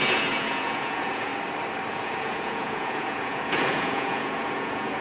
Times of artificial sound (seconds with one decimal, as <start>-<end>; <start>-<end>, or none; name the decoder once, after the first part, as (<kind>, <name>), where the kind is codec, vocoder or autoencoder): 0.0-1.3 (vocoder, Vocos); 1.9-5.0